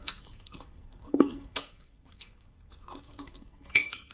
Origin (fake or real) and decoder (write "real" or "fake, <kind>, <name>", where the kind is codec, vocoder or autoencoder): fake, codec, SNAC